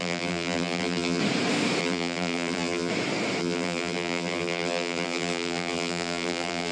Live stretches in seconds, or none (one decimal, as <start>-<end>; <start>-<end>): 1.2-1.8; 2.9-3.4